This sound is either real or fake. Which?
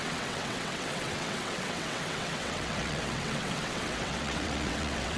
fake